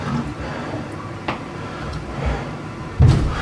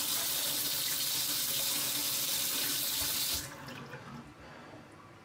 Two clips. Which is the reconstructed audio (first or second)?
first